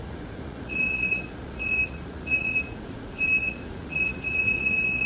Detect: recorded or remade remade